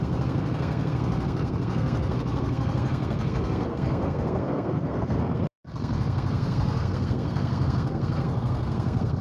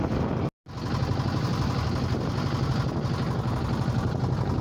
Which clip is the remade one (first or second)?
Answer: first